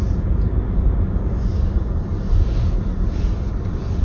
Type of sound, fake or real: fake